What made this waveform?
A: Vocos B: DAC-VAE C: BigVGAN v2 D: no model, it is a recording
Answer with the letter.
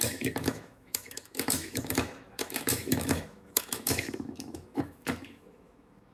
B